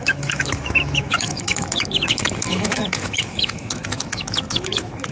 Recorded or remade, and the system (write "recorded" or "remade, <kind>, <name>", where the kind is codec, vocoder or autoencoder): remade, autoencoder, DAC-VAE